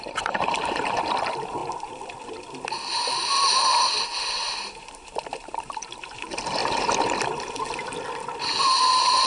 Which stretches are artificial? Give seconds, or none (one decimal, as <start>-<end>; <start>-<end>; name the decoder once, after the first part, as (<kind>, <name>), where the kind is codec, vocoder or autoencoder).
0.0-1.6 (vocoder, BigVGAN v2); 4.6-6.6; 8.9-9.3